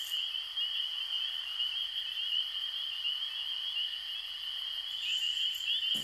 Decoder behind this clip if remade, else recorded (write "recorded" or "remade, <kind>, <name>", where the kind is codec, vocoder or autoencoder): recorded